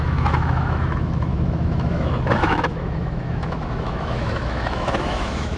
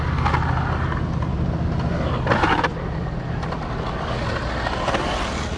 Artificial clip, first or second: first